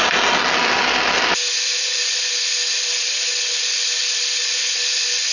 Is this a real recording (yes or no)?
yes